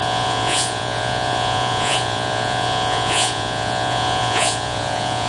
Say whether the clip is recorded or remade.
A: remade